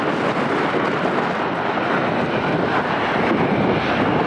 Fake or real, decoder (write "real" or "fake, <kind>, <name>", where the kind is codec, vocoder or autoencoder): real